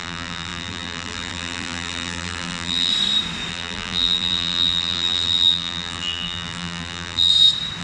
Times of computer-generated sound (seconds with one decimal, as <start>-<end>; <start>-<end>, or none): 0.0-2.9; 3.5-7.3